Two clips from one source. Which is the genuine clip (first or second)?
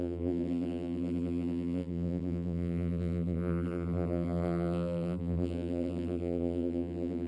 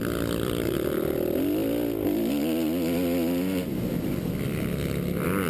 second